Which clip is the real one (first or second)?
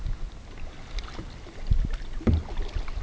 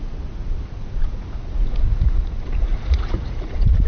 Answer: first